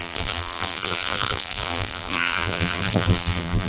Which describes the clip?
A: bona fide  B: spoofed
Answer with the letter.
B